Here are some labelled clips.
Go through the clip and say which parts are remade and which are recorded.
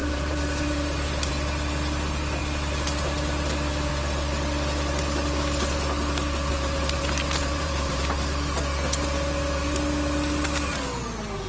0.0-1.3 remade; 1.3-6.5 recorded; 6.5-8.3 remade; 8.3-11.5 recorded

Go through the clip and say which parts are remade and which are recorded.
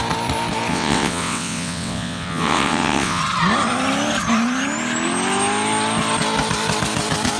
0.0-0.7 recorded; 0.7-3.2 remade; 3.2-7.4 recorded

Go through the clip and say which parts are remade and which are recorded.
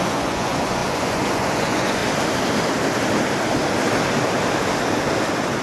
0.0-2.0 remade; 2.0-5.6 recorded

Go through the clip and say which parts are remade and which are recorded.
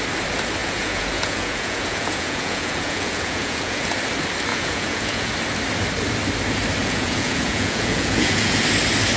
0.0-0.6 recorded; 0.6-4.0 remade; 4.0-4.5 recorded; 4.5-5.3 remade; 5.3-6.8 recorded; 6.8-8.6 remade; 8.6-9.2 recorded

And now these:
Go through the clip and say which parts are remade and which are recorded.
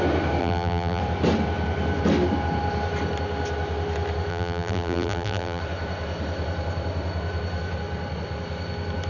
0.0-0.4 recorded; 0.4-1.0 remade; 1.0-4.3 recorded; 4.3-5.6 remade; 5.6-9.1 recorded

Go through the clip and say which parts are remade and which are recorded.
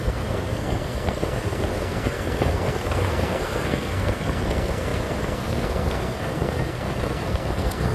0.0-7.9 remade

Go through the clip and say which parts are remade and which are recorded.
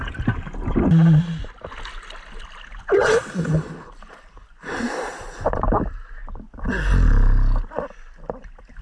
0.0-3.2 recorded; 3.2-4.5 remade; 4.5-8.8 recorded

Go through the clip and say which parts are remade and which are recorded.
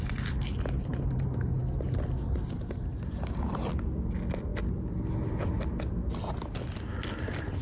0.0-0.9 recorded; 0.9-1.6 remade; 1.6-2.9 recorded; 2.9-3.7 remade; 3.7-7.6 recorded